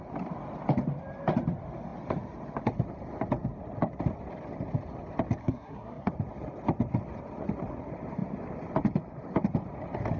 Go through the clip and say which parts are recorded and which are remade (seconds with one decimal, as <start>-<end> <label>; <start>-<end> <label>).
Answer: 0.0-5.4 recorded; 5.4-6.1 remade; 6.1-10.2 recorded